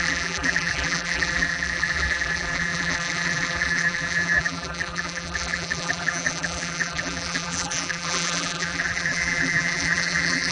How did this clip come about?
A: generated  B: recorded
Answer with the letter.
A